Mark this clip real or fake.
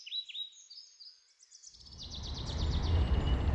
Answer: real